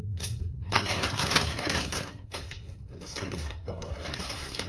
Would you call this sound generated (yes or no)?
yes